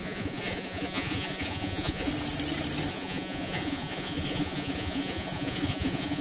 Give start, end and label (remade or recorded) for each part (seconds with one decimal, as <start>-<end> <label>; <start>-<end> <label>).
0.0-2.1 remade; 2.1-2.9 recorded; 2.9-6.2 remade